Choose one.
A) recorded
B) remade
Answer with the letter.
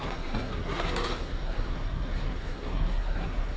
B